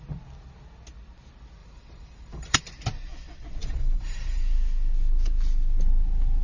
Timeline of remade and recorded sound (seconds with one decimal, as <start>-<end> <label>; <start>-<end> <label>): 0.0-1.6 recorded; 1.6-2.6 remade; 2.6-3.6 recorded; 3.6-4.4 remade; 4.4-6.4 recorded